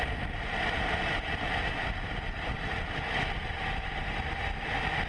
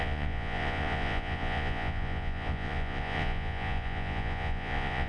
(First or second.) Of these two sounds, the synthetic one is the second